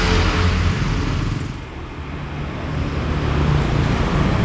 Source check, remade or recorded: recorded